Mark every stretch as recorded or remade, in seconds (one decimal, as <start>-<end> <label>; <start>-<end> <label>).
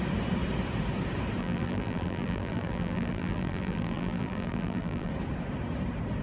0.0-1.4 recorded; 1.4-5.1 remade; 5.1-6.2 recorded